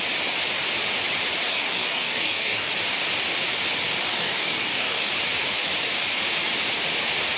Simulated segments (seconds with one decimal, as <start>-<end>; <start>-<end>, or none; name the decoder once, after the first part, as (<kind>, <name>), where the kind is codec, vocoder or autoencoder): 1.5-2.7 (codec, DAC); 4.1-5.1